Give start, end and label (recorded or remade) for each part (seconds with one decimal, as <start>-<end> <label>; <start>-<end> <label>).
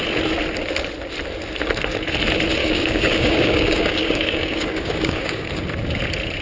0.0-2.6 recorded; 2.6-5.5 remade; 5.5-6.4 recorded